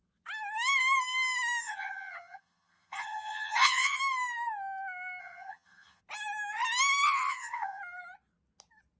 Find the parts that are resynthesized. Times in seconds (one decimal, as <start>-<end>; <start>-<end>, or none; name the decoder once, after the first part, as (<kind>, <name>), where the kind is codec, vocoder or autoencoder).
1.6-4.0 (vocoder, HiFi-GAN); 5.2-6.0; 7.3-7.8